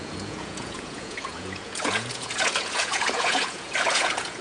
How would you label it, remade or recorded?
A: remade